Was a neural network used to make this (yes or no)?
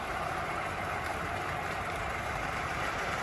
yes